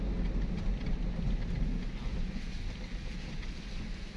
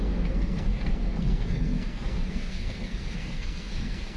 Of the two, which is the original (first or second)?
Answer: first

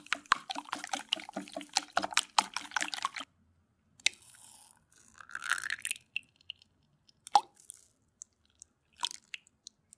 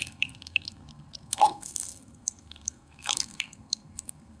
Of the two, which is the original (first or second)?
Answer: first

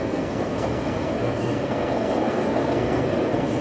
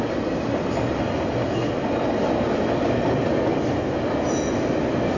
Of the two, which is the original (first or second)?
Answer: second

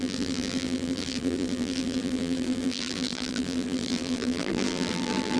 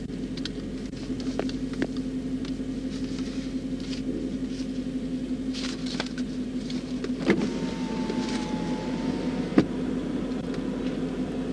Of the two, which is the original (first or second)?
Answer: second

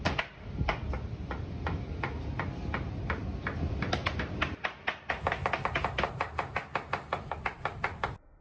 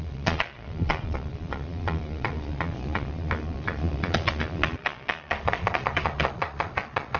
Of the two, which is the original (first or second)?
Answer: first